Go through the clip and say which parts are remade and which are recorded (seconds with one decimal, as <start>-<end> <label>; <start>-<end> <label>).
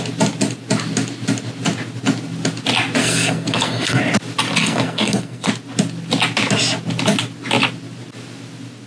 0.0-3.0 recorded; 3.0-4.0 remade; 4.0-4.6 recorded; 4.6-5.5 remade; 5.5-8.9 recorded